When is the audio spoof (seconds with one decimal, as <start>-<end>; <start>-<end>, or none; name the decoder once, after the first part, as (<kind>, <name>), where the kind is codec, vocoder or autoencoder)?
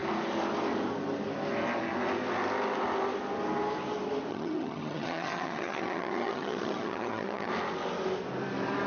4.3-7.5 (vocoder, HiFi-GAN)